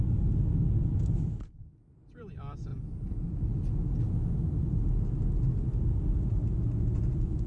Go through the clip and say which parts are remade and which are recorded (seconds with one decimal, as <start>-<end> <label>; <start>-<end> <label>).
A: 0.0-2.7 remade; 2.7-4.7 recorded; 4.7-6.4 remade; 6.4-7.1 recorded; 7.1-7.5 remade